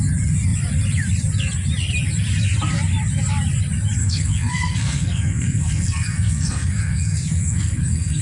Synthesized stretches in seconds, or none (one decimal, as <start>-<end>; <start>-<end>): 4.0-8.2